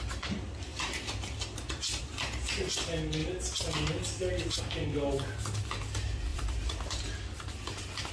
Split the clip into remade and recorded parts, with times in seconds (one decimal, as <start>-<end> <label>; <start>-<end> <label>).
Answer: 0.0-0.7 recorded; 0.7-2.0 remade; 2.0-6.3 recorded; 6.3-8.1 remade